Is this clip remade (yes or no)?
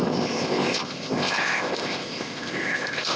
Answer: yes